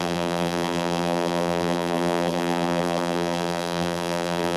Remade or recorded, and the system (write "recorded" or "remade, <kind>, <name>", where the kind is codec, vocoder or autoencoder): remade, vocoder, BigVGAN v2